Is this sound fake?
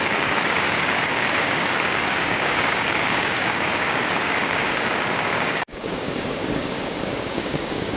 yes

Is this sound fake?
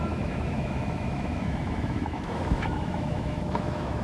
yes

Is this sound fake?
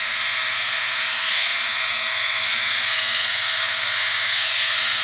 yes